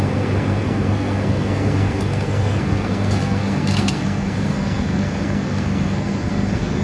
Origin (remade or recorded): remade